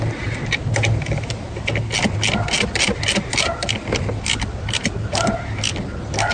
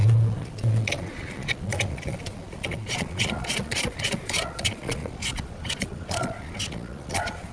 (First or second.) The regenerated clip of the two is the second